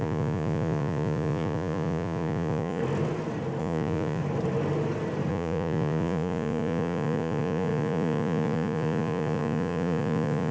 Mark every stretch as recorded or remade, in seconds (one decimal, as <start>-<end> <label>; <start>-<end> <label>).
0.0-2.8 remade; 2.8-3.6 recorded; 3.6-4.2 remade; 4.2-5.3 recorded; 5.3-10.5 remade